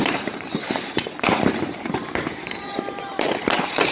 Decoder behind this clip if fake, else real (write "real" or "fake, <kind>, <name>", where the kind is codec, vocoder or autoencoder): fake, vocoder, BigVGAN v2